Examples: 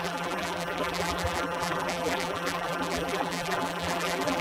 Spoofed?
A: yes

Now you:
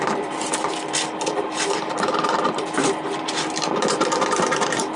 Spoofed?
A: yes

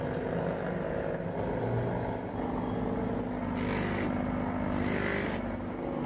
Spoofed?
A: no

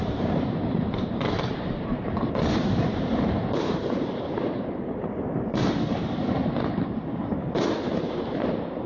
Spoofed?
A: yes